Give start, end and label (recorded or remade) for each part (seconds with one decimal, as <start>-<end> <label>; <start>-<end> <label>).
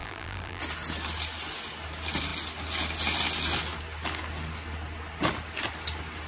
0.0-0.6 remade; 0.6-6.3 recorded